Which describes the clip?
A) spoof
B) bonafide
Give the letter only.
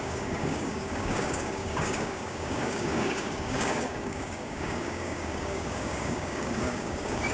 A